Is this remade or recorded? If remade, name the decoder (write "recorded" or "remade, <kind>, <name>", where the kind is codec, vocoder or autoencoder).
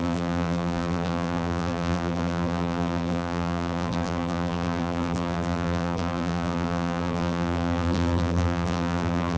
remade, vocoder, BigVGAN v2